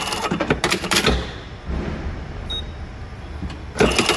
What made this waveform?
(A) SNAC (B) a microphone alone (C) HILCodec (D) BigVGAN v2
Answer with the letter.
B